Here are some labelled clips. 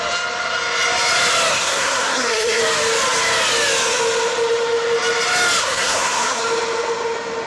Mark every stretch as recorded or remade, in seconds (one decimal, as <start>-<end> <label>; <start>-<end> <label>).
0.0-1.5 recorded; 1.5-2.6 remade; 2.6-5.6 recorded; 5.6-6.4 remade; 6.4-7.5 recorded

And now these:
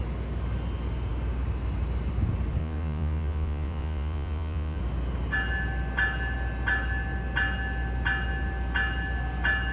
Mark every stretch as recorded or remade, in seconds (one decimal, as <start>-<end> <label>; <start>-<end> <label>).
0.0-2.6 recorded; 2.6-4.8 remade; 4.8-9.7 recorded

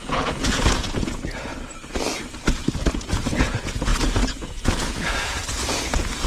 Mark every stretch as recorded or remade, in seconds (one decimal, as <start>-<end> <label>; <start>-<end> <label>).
0.0-1.5 remade; 1.5-3.0 recorded; 3.0-6.3 remade